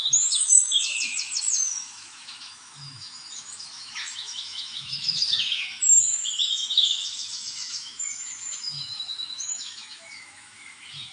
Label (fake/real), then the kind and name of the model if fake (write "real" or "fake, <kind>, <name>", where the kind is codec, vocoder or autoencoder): fake, autoencoder, DAC-VAE